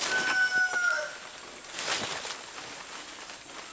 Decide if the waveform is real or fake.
real